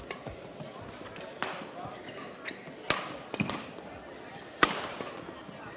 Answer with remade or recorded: recorded